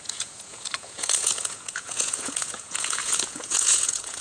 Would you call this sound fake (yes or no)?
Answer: yes